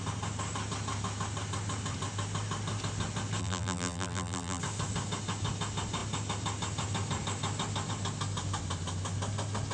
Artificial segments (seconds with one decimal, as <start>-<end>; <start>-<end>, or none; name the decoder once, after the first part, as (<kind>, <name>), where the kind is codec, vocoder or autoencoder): 3.4-4.6 (vocoder, BigVGAN v2)